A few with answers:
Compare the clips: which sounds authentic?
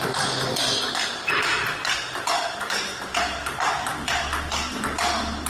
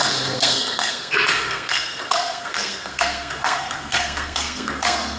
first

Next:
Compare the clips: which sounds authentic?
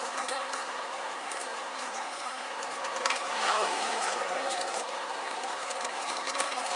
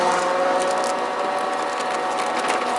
second